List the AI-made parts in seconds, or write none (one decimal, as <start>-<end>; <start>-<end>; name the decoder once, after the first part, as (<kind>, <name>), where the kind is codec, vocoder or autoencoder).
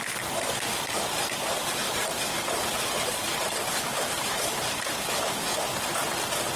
1.6-5.3 (vocoder, BigVGAN v2)